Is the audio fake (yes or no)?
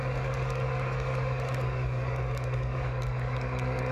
yes